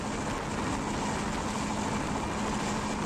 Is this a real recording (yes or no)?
yes